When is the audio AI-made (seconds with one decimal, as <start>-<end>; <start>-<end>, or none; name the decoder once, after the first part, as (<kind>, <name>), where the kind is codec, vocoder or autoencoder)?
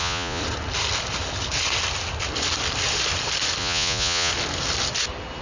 0.0-0.4 (vocoder, Vocos); 3.6-4.3